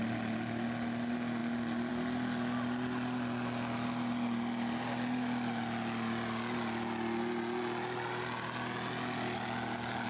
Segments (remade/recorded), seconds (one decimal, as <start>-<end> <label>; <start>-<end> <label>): 0.0-10.1 recorded